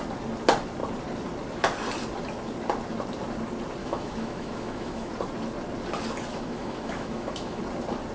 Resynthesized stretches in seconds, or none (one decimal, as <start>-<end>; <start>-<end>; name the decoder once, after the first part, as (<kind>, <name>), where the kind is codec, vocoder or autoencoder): 3.8-5.1 (autoencoder, DAC-VAE); 6.3-7.6